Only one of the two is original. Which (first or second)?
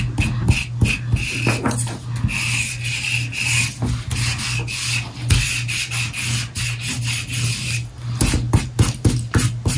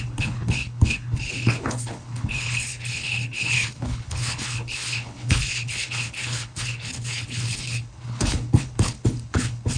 first